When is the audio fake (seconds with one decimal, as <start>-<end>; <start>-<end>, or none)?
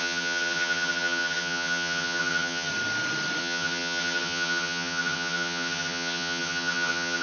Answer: 0.0-2.7; 3.4-7.2